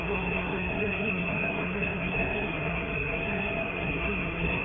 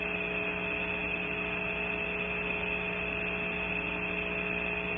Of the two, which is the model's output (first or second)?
first